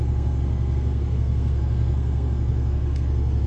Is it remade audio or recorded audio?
remade